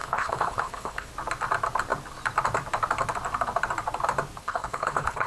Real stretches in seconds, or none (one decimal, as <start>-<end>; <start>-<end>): 1.1-4.4